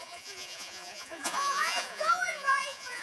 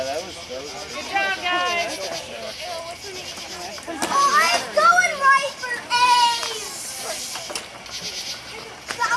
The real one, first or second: second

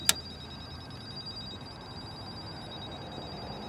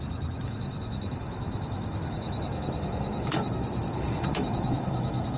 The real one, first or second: first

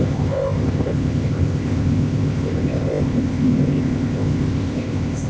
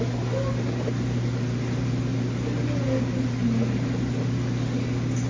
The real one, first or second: second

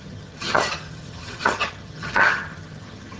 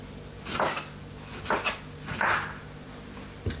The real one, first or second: second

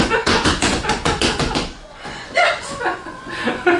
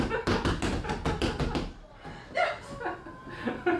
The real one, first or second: second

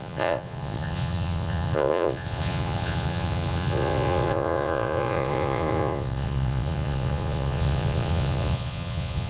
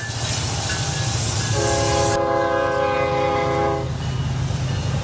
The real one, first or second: second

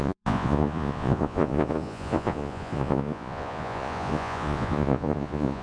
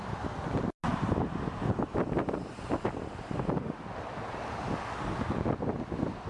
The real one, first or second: second